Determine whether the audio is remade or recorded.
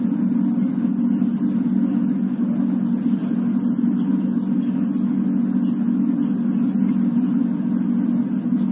recorded